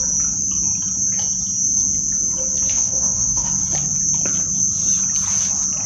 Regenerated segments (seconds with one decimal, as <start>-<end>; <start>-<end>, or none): 2.7-3.5